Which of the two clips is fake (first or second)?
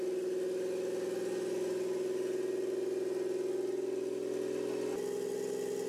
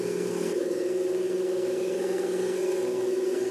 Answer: second